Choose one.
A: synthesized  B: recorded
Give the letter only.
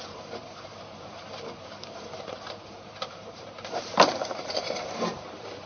A